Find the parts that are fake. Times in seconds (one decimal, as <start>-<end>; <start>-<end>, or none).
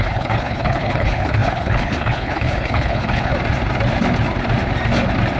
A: 0.0-3.3